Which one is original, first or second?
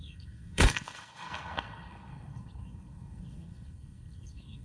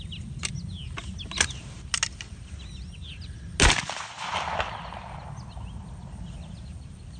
second